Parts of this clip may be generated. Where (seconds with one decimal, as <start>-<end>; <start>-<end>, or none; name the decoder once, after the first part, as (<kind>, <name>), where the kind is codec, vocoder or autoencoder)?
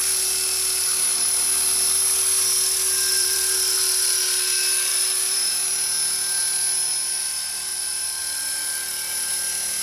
3.1-4.2 (vocoder, BigVGAN v2); 4.9-5.5; 7.7-8.2